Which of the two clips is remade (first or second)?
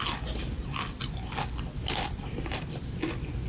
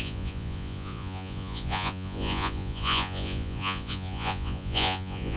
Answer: second